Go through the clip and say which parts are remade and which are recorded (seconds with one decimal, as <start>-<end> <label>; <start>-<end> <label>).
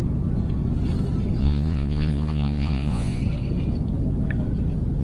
0.0-1.4 recorded; 1.4-3.2 remade; 3.2-5.0 recorded